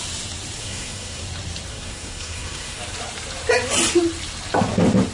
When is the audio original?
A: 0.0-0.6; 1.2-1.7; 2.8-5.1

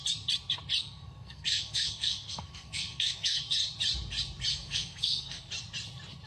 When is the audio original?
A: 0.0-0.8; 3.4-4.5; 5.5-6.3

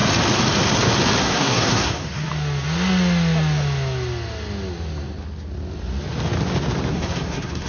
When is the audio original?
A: 0.0-1.2; 2.3-6.9